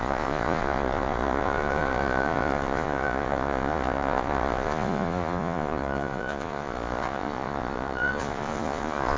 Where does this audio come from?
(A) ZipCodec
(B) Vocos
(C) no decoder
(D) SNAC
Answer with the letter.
B